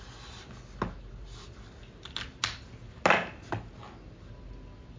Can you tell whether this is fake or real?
real